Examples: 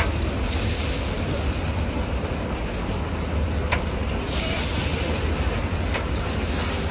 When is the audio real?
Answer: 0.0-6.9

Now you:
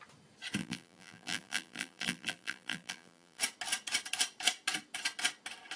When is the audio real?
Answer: 0.0-0.6; 3.4-5.8

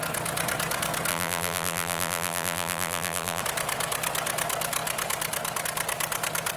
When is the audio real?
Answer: 0.0-1.1; 3.4-6.6

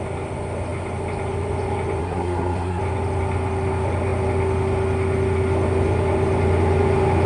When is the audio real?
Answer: 0.0-2.0; 2.8-7.3